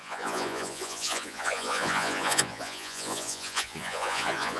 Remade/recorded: remade